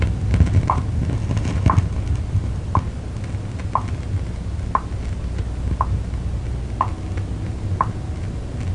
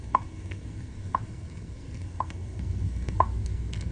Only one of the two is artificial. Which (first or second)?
second